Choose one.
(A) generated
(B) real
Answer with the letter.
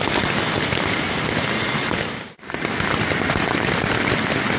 B